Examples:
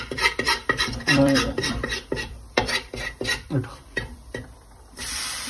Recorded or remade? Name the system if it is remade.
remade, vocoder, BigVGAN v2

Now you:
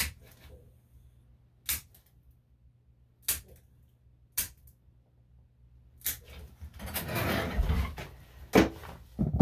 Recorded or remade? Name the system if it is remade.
recorded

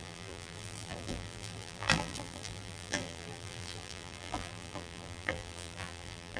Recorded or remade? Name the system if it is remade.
remade, vocoder, BigVGAN v2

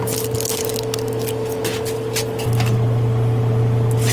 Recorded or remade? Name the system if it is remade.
recorded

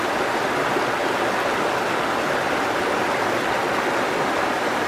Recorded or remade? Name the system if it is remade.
recorded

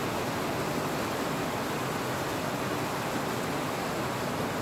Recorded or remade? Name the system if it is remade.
recorded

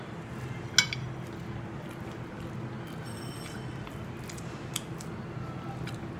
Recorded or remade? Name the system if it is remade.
recorded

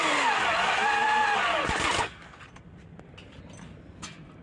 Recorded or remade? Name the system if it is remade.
recorded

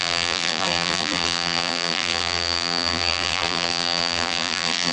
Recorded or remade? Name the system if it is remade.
remade, vocoder, BigVGAN v2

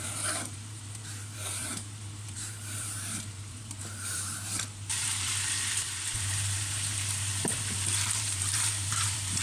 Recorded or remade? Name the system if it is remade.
remade, vocoder, BigVGAN v2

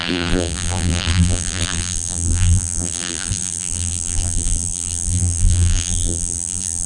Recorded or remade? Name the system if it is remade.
remade, vocoder, BigVGAN v2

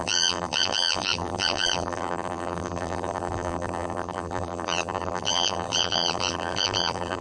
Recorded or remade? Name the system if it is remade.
remade, vocoder, BigVGAN v2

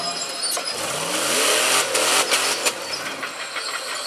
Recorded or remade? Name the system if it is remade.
recorded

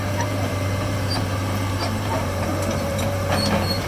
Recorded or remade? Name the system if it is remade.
remade, vocoder, BigVGAN v2